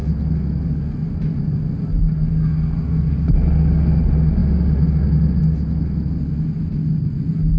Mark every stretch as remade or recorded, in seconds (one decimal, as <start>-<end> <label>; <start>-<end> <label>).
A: 0.0-7.6 recorded